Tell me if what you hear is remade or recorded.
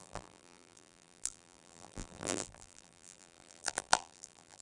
remade